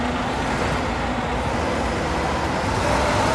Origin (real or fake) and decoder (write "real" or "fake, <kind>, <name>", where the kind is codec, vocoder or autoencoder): real